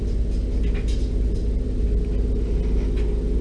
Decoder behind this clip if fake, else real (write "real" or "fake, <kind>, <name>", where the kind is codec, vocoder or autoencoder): real